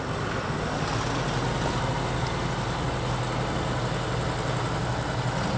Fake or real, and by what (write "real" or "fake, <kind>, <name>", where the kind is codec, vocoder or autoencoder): real